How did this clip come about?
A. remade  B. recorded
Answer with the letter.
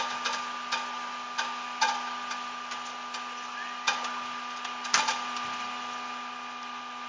B